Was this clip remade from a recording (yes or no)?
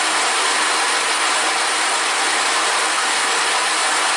no